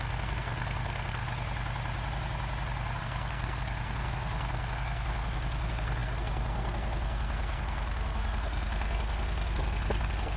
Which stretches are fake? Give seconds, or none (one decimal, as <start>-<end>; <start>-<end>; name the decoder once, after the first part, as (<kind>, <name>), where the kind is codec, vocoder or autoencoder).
0.0-1.2 (codec, SNAC); 3.0-10.4